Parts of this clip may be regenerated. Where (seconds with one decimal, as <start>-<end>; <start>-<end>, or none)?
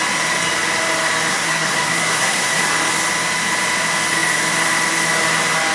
1.3-2.6